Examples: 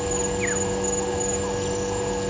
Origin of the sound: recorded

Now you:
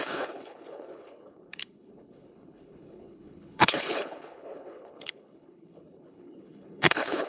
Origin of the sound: remade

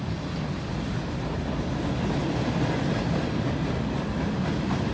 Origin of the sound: recorded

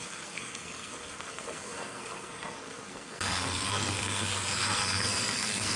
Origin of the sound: remade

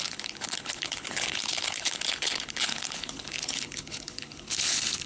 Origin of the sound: remade